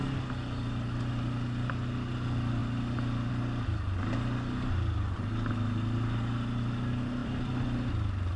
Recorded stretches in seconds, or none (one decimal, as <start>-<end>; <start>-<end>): 0.0-7.2; 7.9-8.4